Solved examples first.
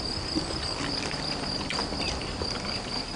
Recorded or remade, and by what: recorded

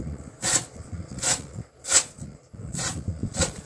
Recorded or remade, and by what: remade, vocoder, Vocos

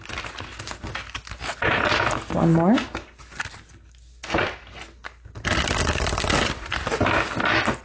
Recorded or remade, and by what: recorded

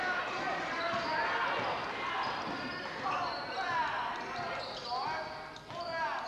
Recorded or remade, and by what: recorded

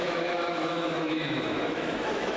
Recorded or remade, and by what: remade, autoencoder, DAC-VAE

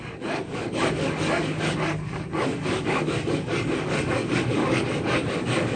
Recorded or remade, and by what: remade, codec, DAC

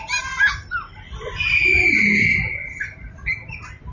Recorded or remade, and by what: recorded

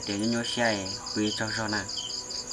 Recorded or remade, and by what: recorded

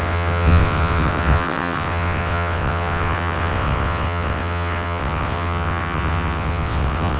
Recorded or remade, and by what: remade, vocoder, WaveNeXt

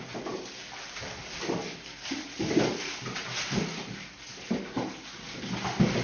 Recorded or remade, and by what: recorded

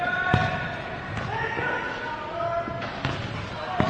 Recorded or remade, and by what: recorded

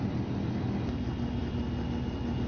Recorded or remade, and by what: recorded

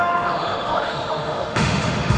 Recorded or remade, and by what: remade, autoencoder, DAC-VAE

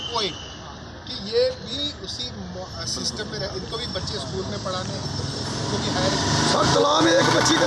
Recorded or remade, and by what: recorded